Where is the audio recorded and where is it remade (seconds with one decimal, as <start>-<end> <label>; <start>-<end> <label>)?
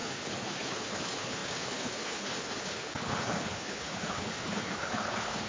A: 0.0-5.5 remade